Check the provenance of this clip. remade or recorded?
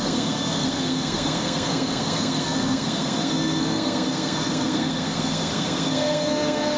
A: remade